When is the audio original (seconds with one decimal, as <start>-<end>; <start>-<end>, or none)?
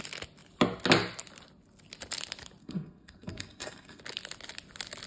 0.0-2.6; 4.0-5.1